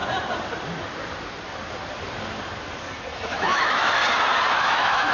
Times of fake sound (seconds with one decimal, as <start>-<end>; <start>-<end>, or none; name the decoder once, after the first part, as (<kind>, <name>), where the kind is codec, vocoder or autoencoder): 3.1-4.0 (autoencoder, DAC-VAE); 4.6-5.1